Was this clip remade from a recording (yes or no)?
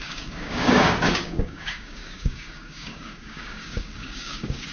yes